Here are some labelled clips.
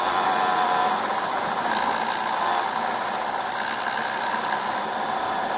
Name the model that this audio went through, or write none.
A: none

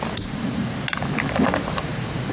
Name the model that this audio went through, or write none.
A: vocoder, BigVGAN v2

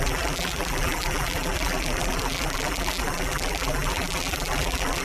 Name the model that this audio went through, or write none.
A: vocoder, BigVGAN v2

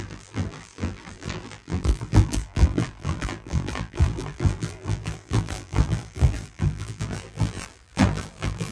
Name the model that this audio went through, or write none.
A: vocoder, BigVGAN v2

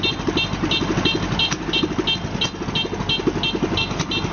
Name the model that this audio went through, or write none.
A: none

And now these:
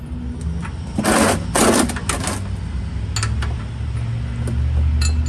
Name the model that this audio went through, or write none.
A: none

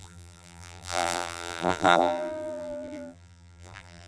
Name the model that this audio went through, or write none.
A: vocoder, BigVGAN v2